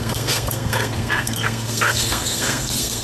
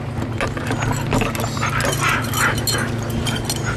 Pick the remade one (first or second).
first